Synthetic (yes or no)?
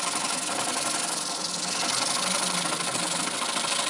no